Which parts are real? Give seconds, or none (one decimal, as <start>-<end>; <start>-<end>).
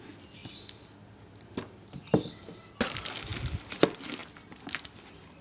0.0-5.4